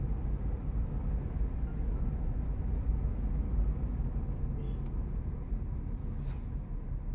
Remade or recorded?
recorded